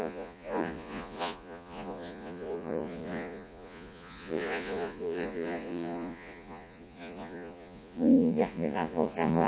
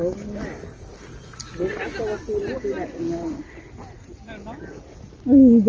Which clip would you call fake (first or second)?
first